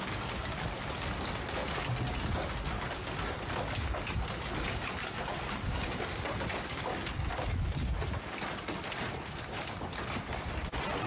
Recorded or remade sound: recorded